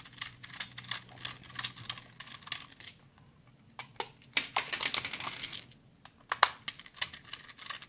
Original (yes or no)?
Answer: yes